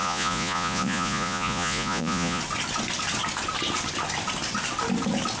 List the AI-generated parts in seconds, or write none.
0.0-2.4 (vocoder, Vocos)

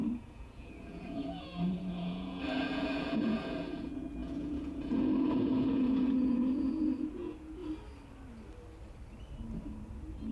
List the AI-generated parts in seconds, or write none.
0.0-7.6 (vocoder, Vocos)

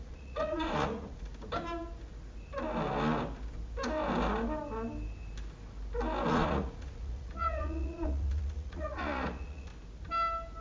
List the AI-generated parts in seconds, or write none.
0.0-1.3 (vocoder, Vocos); 6.3-9.7